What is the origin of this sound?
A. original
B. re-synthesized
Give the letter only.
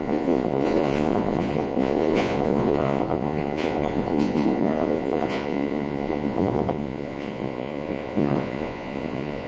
B